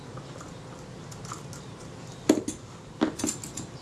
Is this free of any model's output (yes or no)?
yes